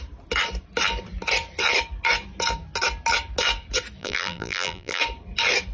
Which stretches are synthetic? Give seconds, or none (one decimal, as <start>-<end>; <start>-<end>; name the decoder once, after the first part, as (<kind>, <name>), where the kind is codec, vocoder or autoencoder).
4.0-5.0 (vocoder, BigVGAN v2)